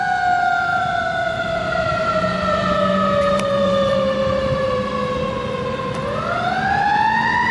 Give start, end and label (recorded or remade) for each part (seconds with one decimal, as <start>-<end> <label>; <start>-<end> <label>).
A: 0.0-0.7 recorded; 0.7-5.1 remade; 5.1-7.5 recorded